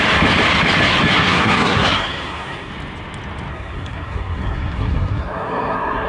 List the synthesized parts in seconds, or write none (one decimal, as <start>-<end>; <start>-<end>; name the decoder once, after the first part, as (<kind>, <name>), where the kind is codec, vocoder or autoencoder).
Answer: 1.1-2.7 (codec, SNAC); 3.5-6.1